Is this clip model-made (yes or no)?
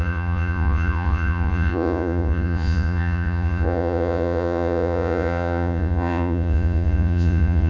yes